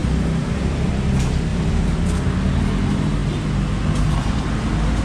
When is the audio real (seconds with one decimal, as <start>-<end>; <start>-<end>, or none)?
0.9-1.5; 2.0-5.0